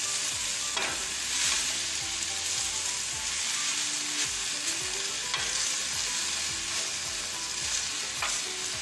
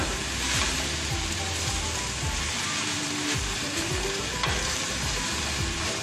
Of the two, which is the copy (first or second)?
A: second